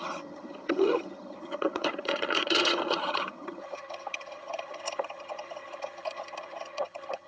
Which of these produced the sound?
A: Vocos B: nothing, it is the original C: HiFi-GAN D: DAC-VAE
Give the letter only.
C